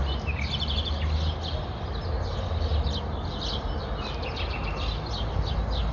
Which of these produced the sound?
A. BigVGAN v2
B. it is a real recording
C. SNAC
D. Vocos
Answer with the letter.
B